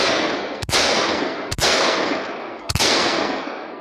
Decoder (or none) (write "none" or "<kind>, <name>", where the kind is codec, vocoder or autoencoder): codec, SNAC